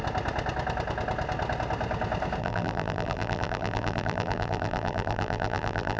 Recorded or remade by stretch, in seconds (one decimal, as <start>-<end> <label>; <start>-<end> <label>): 0.0-2.4 recorded; 2.4-6.0 remade